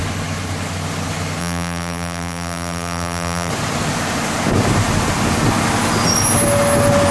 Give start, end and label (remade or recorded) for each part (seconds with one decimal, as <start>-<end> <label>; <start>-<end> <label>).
0.0-1.4 recorded; 1.4-3.5 remade; 3.5-7.1 recorded